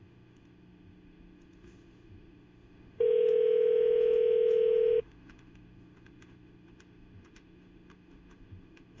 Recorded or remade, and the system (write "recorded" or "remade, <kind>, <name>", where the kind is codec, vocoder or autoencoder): remade, autoencoder, DAC-VAE